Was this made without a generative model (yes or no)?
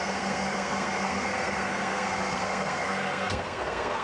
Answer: no